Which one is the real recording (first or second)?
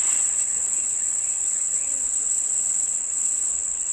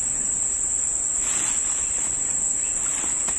second